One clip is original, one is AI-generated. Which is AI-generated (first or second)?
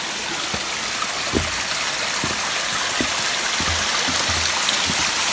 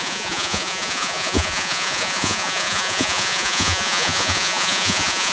second